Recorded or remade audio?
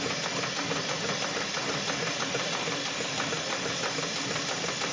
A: remade